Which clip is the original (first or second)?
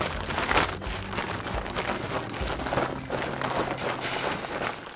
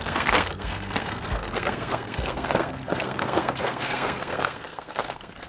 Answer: first